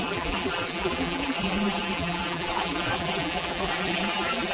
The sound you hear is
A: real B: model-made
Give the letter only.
B